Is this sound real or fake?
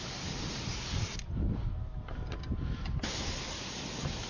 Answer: real